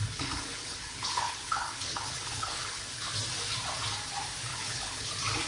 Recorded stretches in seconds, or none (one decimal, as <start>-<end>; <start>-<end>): 3.1-4.5; 5.1-5.5